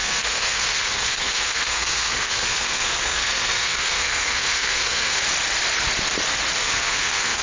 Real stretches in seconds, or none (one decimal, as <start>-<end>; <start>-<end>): 5.2-6.6